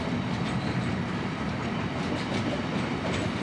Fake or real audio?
fake